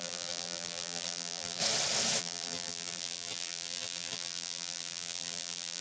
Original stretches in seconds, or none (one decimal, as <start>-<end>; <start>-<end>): 1.6-2.2

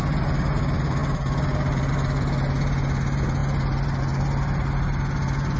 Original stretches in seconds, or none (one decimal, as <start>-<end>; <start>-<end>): 0.0-5.6

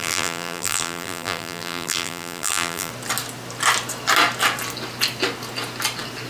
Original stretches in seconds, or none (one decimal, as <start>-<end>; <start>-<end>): 2.9-6.3

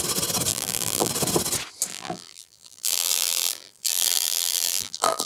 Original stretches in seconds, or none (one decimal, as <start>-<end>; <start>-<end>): 0.0-0.5; 1.1-1.9

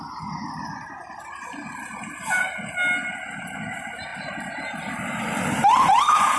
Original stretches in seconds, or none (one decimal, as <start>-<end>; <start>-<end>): 0.0-4.1

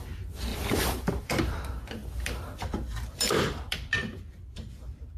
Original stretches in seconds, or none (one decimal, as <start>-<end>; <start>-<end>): none

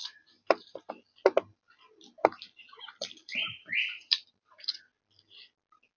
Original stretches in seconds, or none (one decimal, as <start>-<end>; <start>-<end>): 0.9-3.2; 4.9-6.0